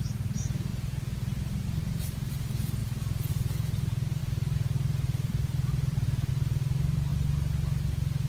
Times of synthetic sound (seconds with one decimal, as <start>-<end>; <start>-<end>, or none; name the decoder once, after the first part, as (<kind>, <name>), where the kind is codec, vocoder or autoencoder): 4.2-6.3 (vocoder, BigVGAN v2)